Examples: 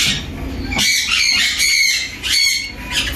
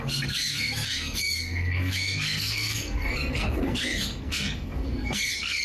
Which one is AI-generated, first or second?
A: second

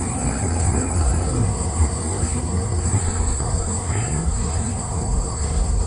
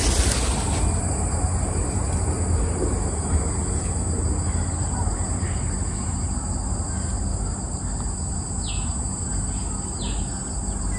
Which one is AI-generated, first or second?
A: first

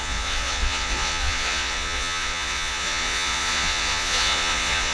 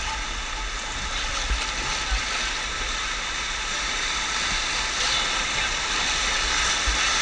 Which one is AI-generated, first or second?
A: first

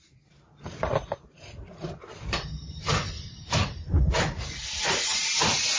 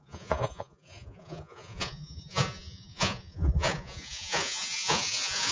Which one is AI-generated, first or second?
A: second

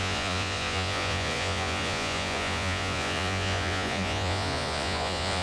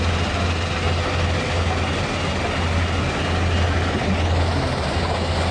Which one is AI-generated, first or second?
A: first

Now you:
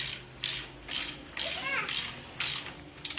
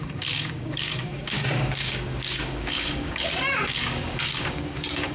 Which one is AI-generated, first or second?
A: second